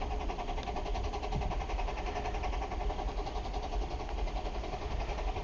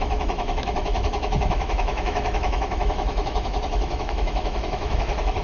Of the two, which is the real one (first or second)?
first